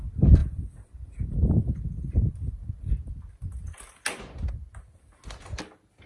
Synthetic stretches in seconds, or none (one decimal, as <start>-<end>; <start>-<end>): 0.4-2.5